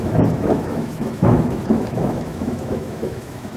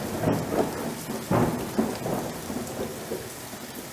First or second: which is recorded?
second